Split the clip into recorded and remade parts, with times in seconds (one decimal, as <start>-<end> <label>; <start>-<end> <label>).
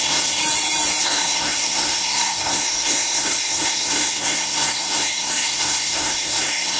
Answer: 0.0-0.4 remade; 0.4-1.0 recorded; 1.0-6.8 remade